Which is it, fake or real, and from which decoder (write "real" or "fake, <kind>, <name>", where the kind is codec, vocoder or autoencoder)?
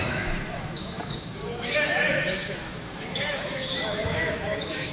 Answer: fake, autoencoder, DAC-VAE